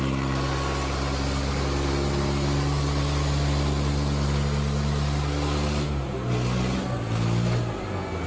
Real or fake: real